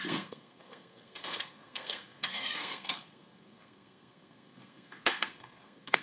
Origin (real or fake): fake